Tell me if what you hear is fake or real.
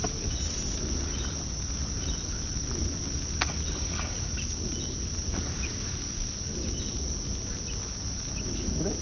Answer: real